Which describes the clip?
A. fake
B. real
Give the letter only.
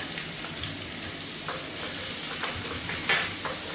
B